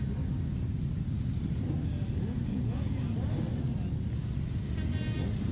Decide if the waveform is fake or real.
real